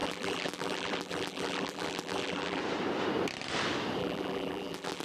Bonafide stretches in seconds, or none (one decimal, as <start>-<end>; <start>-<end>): 2.6-4.0